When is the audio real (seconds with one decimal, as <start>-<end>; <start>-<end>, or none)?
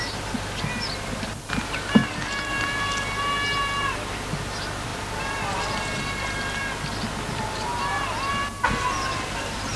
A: 0.0-4.9; 6.6-9.8